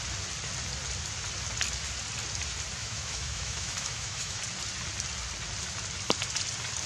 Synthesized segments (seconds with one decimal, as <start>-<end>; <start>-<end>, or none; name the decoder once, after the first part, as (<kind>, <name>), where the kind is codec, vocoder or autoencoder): 2.8-4.4 (autoencoder, DAC-VAE)